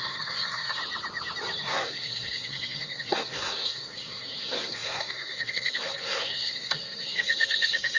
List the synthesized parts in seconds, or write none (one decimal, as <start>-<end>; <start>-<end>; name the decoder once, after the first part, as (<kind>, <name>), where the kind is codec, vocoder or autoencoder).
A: 0.0-0.8 (codec, SNAC); 1.6-8.0